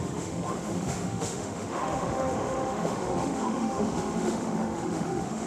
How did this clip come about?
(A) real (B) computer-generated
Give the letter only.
B